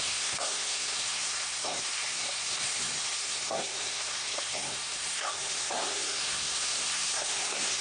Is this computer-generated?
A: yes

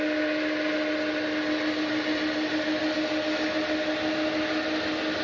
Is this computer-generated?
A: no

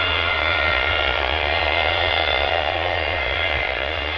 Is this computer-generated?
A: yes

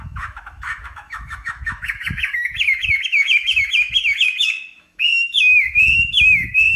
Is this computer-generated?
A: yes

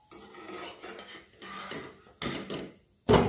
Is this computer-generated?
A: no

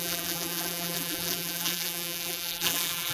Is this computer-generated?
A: yes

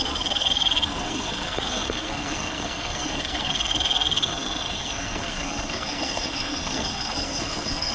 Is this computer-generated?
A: yes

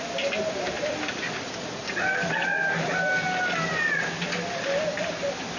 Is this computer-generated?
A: no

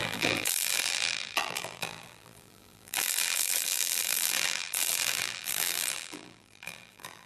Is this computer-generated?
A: yes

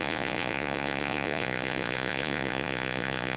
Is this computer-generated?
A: yes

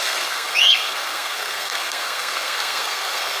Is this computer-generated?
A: yes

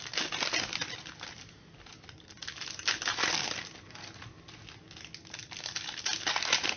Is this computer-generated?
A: no